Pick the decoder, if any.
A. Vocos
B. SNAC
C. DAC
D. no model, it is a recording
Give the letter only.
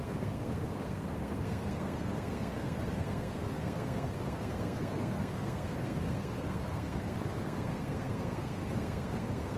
B